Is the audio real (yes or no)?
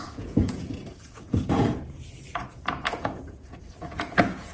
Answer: no